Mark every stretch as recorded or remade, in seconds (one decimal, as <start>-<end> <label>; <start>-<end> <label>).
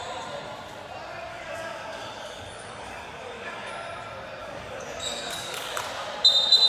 0.0-1.3 recorded; 1.3-3.7 remade; 3.7-4.4 recorded; 4.4-5.8 remade; 5.8-6.7 recorded